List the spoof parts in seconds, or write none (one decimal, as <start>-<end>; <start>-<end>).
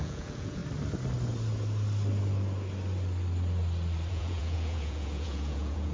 0.0-0.6; 4.1-5.9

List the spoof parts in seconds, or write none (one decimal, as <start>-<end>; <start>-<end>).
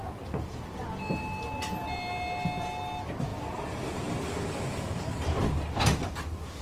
none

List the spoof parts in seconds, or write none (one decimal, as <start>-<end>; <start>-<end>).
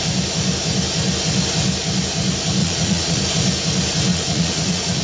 2.6-3.2; 4.1-5.0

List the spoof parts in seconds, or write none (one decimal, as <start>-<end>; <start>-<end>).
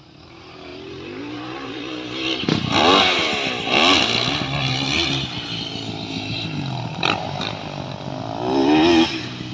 none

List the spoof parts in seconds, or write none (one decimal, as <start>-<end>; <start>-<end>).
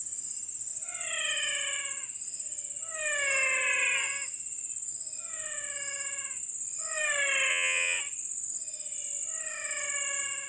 7.5-8.0